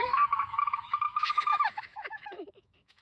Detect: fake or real fake